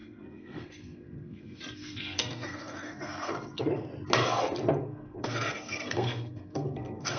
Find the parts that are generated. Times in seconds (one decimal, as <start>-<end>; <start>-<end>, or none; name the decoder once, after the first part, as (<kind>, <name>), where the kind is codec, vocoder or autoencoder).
0.0-3.9 (codec, SNAC); 4.7-7.2